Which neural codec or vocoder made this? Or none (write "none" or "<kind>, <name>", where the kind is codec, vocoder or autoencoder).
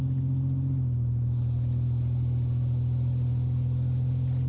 none